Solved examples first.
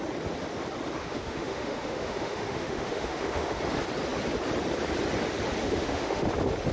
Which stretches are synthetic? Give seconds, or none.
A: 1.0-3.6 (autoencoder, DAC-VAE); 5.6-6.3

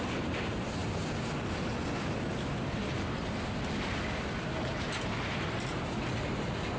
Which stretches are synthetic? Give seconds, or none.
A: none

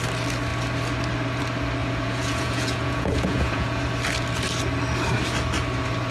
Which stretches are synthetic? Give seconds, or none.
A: 1.8-3.8 (vocoder, Vocos)

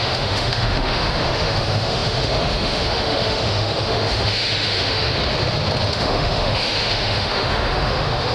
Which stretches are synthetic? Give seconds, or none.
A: 0.0-5.2 (autoencoder, DAC-VAE); 5.9-8.3

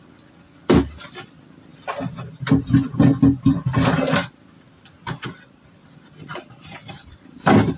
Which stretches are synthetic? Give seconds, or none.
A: none

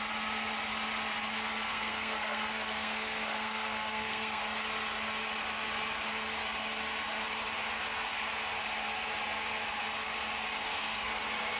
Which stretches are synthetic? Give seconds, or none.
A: 1.7-4.4 (codec, SNAC); 10.6-11.1

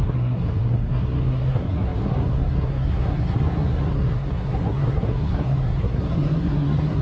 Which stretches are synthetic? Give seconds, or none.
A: 0.0-7.0 (codec, SNAC)

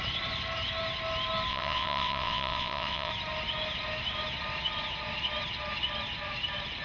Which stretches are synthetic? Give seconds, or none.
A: 1.5-3.1 (vocoder, WaveNeXt)